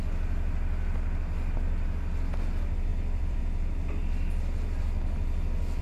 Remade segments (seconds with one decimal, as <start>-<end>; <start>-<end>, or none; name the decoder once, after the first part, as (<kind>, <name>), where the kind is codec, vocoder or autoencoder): 2.9-3.4 (vocoder, BigVGAN v2)